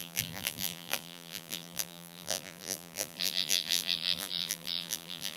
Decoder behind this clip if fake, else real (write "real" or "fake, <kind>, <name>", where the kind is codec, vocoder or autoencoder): fake, vocoder, BigVGAN v2